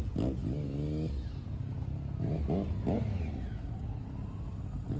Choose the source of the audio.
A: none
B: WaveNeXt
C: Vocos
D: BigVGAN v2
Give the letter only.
A